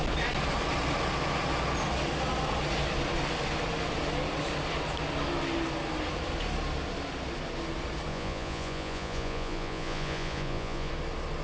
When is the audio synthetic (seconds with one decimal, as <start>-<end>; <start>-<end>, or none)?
8.1-10.9